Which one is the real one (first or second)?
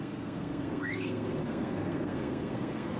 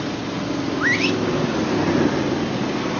second